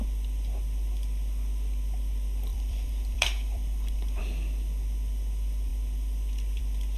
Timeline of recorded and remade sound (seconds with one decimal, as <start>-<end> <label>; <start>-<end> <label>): 0.0-2.5 recorded; 2.5-4.2 remade; 4.2-7.0 recorded